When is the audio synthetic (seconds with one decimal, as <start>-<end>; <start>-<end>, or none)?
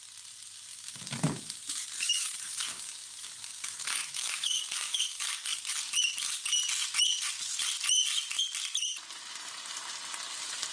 0.7-5.6